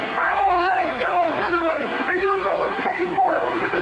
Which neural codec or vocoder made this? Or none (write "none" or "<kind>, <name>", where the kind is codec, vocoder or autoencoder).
codec, SNAC